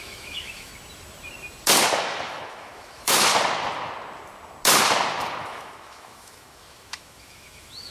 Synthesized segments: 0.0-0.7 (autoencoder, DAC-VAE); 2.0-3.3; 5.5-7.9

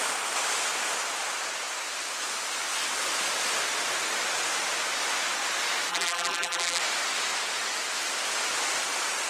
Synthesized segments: 5.9-6.8 (vocoder, BigVGAN v2)

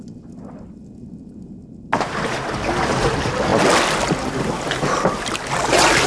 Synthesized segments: none

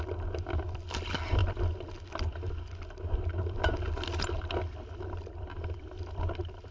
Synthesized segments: none

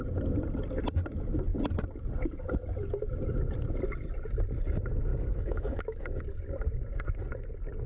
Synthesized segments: 5.1-6.2 (autoencoder, DAC-VAE)